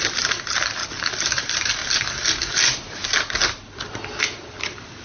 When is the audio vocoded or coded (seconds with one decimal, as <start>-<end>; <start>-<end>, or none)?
0.0-0.8; 1.3-1.8; 3.9-5.0